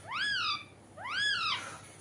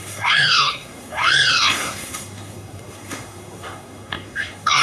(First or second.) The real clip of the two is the first